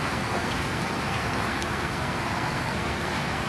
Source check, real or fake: fake